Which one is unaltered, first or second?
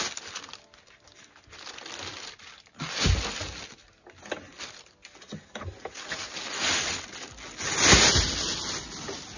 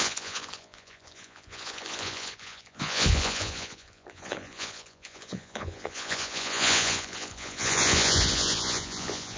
first